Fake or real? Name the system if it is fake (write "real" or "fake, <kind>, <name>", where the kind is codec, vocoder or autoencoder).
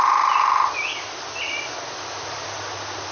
real